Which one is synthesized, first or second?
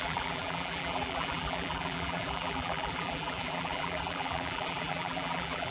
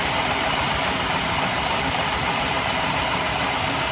first